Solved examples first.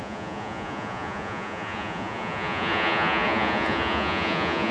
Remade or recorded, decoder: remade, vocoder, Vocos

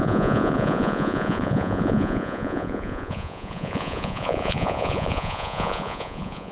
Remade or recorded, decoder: remade, vocoder, Vocos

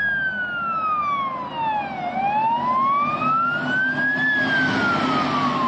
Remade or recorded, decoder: recorded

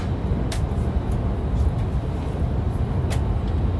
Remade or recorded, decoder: recorded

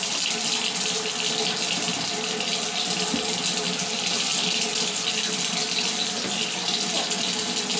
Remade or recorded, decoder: recorded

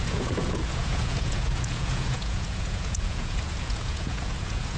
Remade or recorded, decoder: remade, vocoder, Vocos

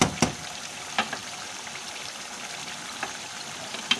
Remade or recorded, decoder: recorded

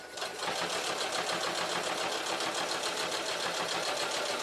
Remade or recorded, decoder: recorded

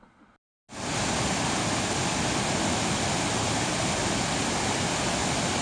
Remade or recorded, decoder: recorded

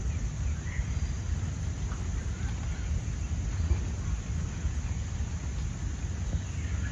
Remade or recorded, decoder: recorded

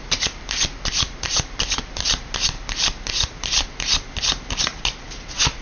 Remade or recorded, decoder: recorded